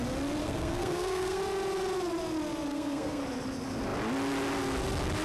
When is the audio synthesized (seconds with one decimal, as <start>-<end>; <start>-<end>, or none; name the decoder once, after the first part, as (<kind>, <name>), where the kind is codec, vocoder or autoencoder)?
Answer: 0.4-1.4 (codec, SNAC); 2.7-3.2